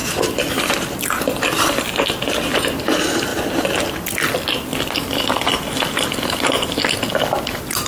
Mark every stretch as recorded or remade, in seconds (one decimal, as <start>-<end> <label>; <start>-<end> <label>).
0.0-7.9 recorded